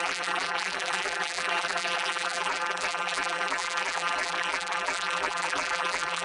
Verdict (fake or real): fake